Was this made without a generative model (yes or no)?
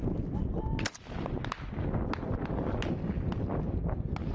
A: yes